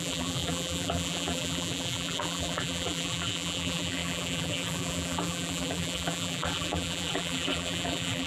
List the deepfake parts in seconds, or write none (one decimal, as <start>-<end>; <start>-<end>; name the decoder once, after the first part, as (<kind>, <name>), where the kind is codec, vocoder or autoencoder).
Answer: 0.0-8.3 (vocoder, BigVGAN v2)